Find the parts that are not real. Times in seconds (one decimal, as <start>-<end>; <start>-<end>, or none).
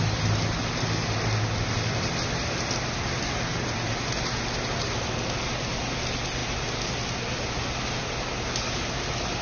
none